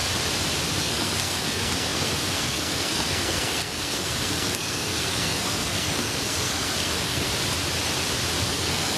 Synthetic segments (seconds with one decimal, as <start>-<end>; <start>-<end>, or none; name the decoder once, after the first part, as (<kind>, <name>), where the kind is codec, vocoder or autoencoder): 0.8-7.3 (codec, SNAC); 8.4-9.0